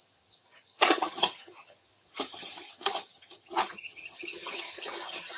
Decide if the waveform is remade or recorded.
remade